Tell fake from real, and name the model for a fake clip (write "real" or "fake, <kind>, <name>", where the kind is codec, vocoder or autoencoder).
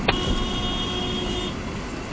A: real